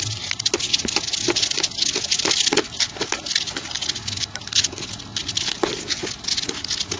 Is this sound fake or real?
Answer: real